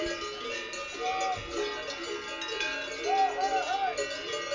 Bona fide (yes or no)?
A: yes